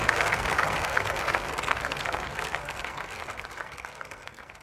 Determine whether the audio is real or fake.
fake